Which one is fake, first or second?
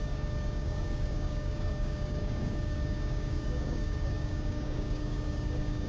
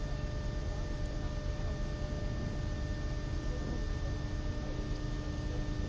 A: first